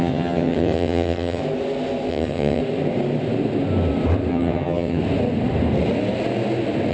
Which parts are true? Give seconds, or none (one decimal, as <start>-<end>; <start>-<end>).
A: 1.4-2.1; 2.6-4.3; 5.0-6.9